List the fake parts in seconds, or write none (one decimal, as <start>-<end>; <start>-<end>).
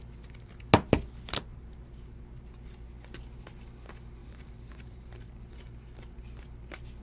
1.5-2.2; 4.2-5.5